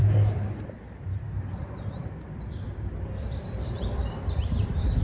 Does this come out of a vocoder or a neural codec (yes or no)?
yes